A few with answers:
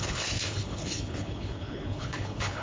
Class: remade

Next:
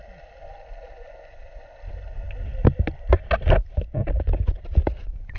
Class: recorded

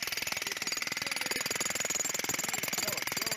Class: recorded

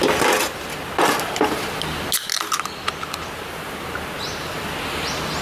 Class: recorded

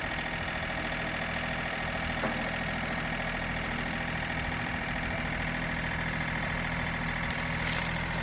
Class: remade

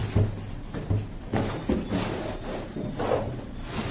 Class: recorded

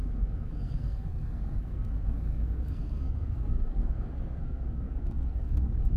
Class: remade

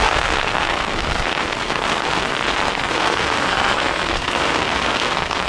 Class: remade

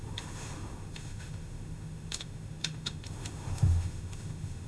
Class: remade